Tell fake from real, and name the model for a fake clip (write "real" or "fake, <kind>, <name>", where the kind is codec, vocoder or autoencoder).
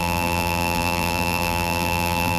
fake, vocoder, BigVGAN v2